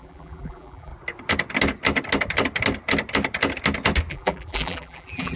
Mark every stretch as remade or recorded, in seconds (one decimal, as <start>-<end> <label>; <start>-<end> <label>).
0.0-0.9 remade; 0.9-4.1 recorded; 4.1-5.4 remade